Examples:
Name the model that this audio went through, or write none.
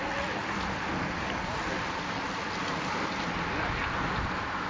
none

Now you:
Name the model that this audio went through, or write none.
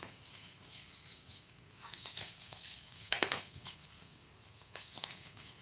codec, SNAC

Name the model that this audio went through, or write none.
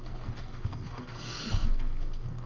codec, SNAC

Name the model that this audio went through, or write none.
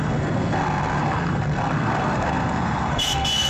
codec, SNAC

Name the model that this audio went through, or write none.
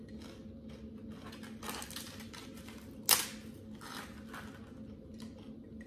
none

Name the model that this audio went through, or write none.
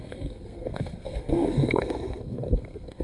codec, SNAC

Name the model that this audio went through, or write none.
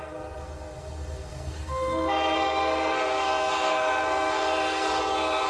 codec, SNAC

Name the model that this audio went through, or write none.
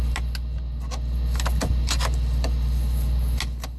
none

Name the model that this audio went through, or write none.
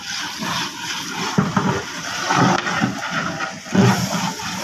none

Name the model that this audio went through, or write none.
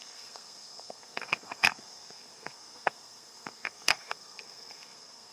codec, SNAC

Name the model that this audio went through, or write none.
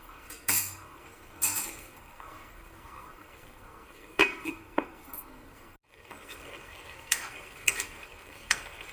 codec, SNAC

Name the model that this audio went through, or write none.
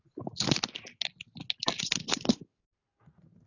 none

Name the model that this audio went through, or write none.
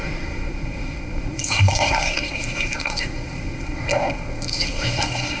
codec, SNAC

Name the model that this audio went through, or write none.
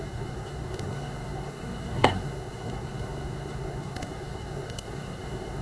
codec, SNAC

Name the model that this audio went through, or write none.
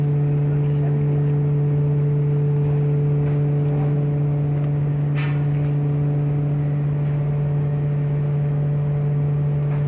none